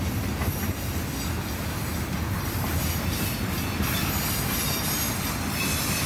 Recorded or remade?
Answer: recorded